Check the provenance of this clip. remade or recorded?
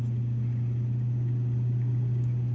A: recorded